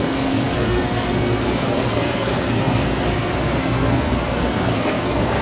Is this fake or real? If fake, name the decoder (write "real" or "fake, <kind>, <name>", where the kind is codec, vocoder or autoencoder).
fake, codec, SNAC